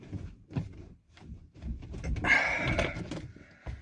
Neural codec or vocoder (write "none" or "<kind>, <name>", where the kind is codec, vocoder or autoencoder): none